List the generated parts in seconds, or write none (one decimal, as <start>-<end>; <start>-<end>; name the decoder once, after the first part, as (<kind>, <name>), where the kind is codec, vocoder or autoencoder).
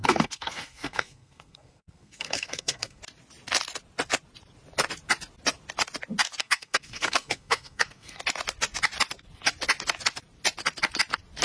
0.0-3.0 (codec, SNAC); 6.4-8.2